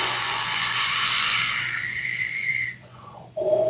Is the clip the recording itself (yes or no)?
no